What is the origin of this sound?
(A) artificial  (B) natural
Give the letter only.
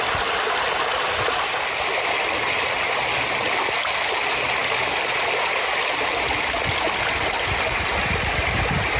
B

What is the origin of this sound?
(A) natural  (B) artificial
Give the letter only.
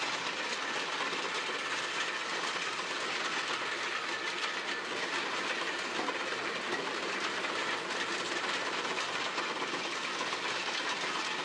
A